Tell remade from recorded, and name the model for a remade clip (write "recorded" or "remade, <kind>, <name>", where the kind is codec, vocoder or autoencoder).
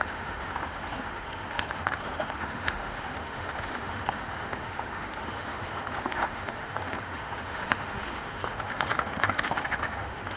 remade, autoencoder, DAC-VAE